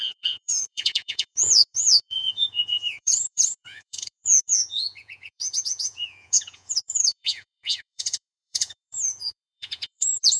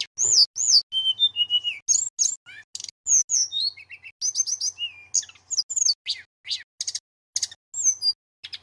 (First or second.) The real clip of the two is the second